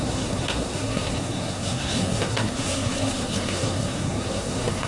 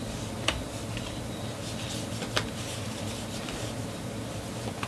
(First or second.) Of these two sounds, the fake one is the first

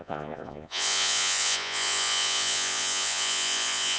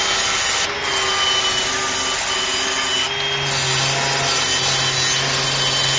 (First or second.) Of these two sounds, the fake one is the first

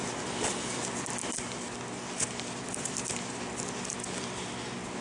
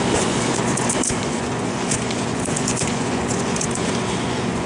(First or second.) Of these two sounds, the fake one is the second